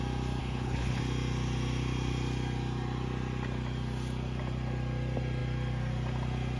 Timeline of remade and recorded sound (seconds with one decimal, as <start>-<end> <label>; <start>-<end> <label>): 0.0-0.4 recorded; 0.4-1.0 remade; 1.0-6.6 recorded